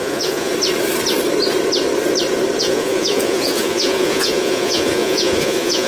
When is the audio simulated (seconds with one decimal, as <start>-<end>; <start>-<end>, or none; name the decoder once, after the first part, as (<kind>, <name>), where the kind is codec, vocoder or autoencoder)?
0.0-0.5 (vocoder, Vocos); 2.6-5.9